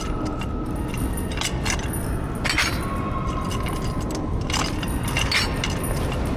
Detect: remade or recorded recorded